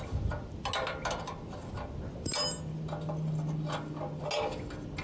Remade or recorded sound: recorded